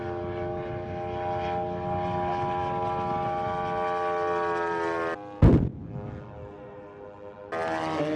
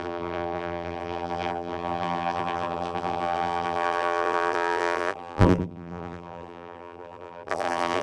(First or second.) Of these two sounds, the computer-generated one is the second